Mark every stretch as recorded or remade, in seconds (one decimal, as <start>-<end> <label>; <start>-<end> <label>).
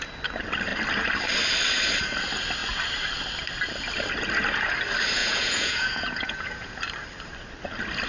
0.0-5.2 recorded; 5.2-6.8 remade; 6.8-8.1 recorded